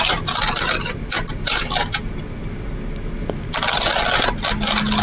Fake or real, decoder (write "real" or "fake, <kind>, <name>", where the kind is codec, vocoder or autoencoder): real